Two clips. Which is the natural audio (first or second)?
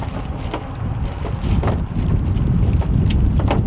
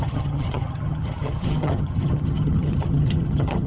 first